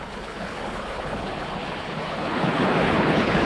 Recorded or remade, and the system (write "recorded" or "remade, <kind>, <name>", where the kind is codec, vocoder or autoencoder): remade, codec, HILCodec